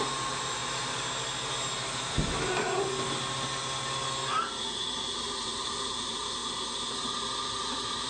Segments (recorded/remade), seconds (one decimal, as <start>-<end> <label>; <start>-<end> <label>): 0.0-0.6 remade; 0.6-5.2 recorded; 5.2-6.4 remade; 6.4-8.1 recorded